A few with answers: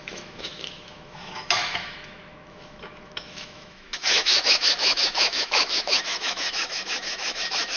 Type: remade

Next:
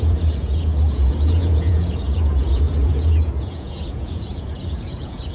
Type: remade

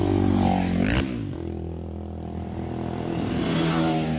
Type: recorded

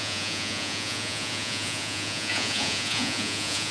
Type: remade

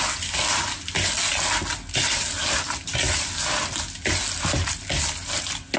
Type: recorded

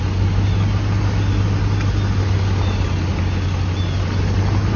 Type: recorded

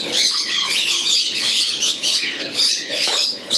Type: remade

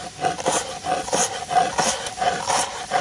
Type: recorded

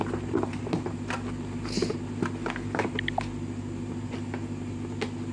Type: recorded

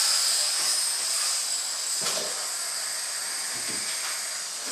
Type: recorded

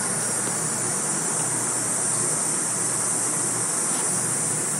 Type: recorded